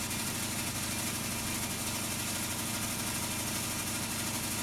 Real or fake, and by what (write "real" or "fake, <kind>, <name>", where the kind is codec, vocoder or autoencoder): real